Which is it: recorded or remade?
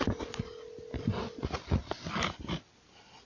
recorded